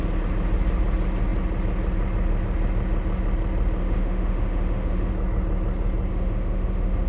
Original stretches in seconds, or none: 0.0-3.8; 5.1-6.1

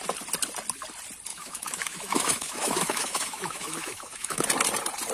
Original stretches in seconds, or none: 0.0-1.3; 4.4-5.1

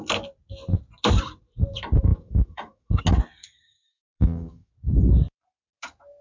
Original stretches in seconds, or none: 0.0-2.1; 3.0-3.4; 4.7-6.2

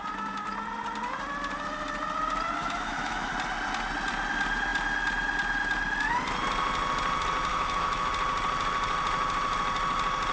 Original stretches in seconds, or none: 0.0-2.6; 3.3-7.5; 8.1-10.3